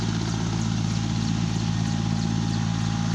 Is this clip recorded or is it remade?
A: recorded